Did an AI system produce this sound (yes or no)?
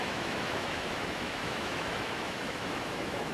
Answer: yes